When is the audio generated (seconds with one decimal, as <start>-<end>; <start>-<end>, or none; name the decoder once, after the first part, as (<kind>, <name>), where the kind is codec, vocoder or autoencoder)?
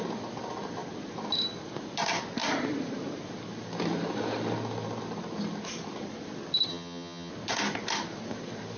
6.7-7.3 (vocoder, HiFi-GAN)